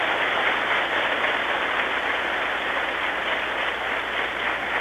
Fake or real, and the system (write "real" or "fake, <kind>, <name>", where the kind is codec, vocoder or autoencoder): real